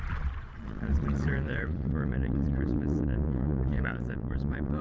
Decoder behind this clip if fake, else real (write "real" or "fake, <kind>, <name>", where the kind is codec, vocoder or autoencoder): fake, vocoder, Vocos